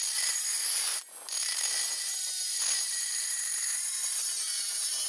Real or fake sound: real